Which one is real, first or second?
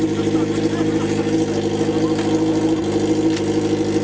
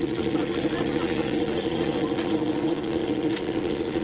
first